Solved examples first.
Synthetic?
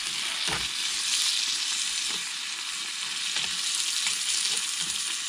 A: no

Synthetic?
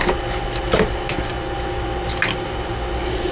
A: no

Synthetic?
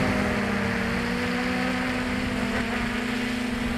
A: no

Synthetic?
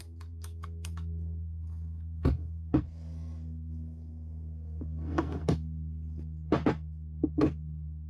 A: yes